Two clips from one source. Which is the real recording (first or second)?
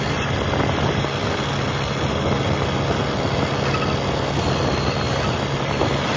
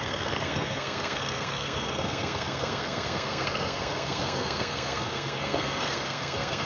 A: first